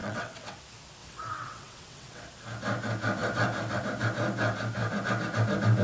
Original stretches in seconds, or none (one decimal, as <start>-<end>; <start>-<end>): 0.6-1.0; 2.2-5.8